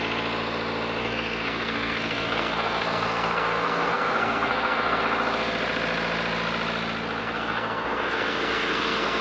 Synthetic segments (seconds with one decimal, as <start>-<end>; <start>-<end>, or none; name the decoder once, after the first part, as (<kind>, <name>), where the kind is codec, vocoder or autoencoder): 1.0-5.0 (codec, SNAC); 7.2-9.2